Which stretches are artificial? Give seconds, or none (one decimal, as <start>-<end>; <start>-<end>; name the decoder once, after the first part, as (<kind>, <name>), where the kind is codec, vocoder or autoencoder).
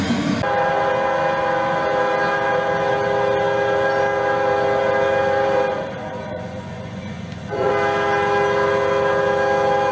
5.7-7.7 (vocoder, Vocos)